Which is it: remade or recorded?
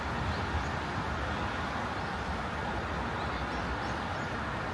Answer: recorded